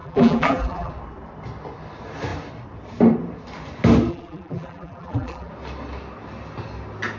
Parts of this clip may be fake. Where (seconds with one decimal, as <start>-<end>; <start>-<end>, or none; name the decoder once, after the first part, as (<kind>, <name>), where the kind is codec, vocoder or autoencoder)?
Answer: 0.0-0.9 (vocoder, BigVGAN v2); 4.1-5.5